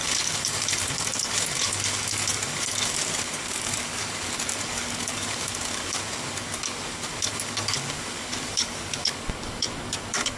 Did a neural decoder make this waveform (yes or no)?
yes